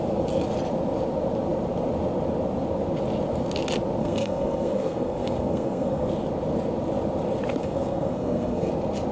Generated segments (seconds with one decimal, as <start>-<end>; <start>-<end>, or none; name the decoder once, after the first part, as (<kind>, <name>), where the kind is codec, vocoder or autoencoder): 4.0-6.1 (codec, SNAC); 7.6-8.7